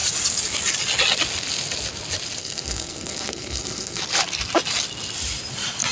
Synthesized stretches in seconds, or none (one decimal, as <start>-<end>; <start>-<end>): 2.4-4.0